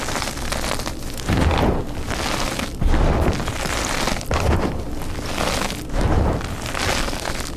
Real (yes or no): yes